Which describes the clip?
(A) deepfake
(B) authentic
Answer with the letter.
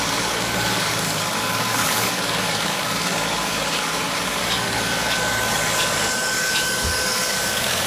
A